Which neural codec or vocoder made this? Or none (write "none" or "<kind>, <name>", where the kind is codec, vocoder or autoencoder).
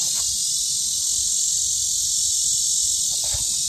none